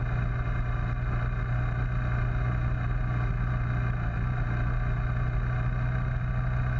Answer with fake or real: real